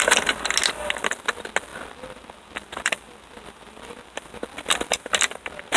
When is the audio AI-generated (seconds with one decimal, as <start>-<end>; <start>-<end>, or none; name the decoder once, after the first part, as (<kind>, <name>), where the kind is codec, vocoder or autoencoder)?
none